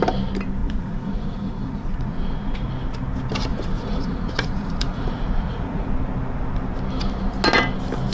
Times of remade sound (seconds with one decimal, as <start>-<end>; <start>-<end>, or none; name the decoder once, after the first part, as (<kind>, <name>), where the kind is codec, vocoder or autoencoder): 0.6-2.7 (vocoder, Vocos); 3.5-5.9